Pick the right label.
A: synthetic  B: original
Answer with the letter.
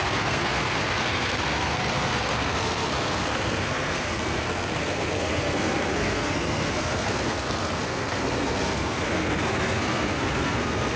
A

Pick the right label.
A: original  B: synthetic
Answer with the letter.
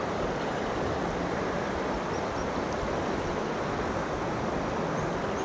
A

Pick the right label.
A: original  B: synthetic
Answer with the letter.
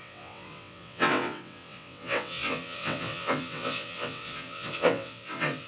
B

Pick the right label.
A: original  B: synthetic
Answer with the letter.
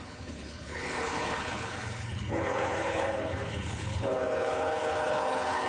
B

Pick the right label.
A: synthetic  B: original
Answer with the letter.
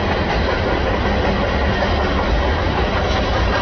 B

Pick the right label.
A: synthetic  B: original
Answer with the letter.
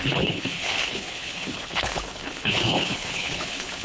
A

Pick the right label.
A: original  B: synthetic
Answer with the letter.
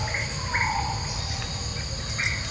A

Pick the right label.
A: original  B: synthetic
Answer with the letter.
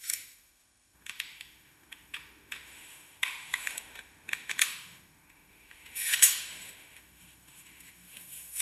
B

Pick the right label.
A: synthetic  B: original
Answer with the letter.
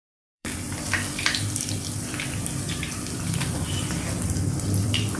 A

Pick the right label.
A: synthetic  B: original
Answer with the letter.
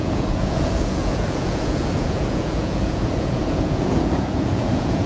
A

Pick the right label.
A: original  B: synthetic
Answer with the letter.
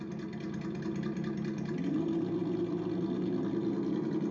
A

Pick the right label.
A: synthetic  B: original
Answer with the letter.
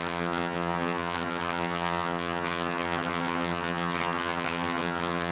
A